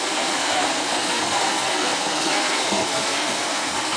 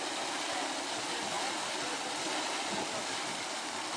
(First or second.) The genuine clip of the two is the second